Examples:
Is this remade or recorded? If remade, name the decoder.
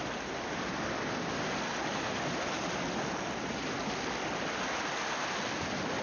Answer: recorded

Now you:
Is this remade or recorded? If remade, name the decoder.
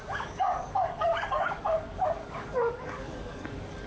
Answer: remade, codec, DAC